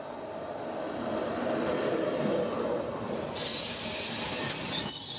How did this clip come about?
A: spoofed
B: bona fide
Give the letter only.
B